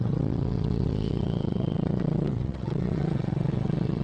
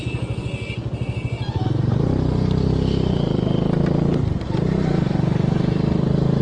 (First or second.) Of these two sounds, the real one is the second